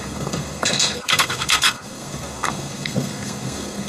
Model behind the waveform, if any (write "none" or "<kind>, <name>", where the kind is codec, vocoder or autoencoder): codec, SNAC